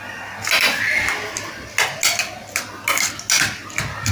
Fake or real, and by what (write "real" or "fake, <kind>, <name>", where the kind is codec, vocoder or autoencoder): real